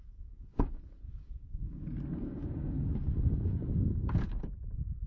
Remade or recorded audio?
remade